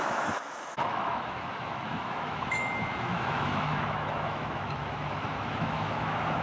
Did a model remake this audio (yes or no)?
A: yes